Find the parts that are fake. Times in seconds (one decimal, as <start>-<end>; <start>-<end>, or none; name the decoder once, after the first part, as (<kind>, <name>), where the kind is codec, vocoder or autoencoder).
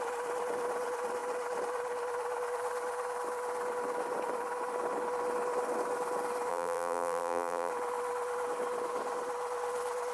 6.5-7.7 (vocoder, BigVGAN v2)